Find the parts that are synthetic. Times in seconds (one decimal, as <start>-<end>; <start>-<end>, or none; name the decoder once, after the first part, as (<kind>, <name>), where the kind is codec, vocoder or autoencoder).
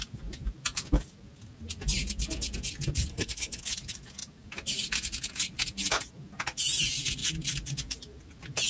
3.1-3.6 (codec, SNAC)